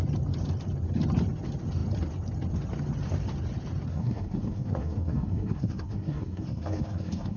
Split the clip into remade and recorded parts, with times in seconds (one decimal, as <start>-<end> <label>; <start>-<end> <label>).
0.0-3.9 recorded; 3.9-7.4 remade